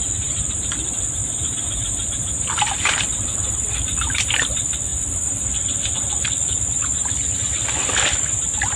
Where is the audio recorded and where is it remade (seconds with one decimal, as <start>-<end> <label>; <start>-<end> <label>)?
0.0-8.8 remade